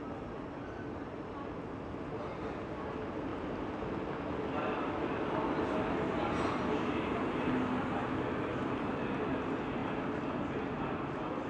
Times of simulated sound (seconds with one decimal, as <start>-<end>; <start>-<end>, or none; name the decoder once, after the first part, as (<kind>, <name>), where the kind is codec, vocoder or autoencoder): none